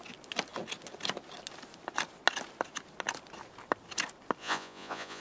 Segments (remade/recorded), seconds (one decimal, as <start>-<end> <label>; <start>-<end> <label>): 0.0-4.4 recorded; 4.4-5.2 remade

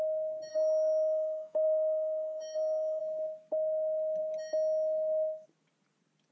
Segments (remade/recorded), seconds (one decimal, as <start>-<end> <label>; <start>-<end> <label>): 0.0-0.5 recorded; 0.5-3.0 remade; 3.0-6.3 recorded

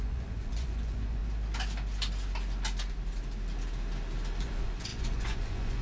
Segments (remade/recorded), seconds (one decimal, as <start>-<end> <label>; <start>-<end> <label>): 0.0-1.2 remade; 1.2-4.4 recorded; 4.4-5.8 remade

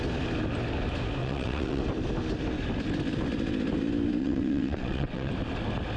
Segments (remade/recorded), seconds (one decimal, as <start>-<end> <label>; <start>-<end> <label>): 0.0-1.2 recorded; 1.2-1.8 remade; 1.8-4.2 recorded; 4.2-5.3 remade; 5.3-6.0 recorded

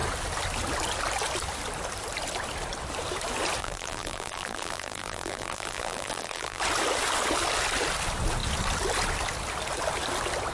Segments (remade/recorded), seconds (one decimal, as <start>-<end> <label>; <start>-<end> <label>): 0.0-3.6 recorded; 3.6-6.6 remade; 6.6-10.5 recorded

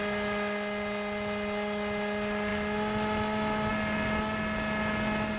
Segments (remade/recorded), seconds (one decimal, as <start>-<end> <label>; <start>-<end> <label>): 0.0-5.4 recorded